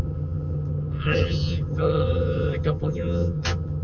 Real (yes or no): no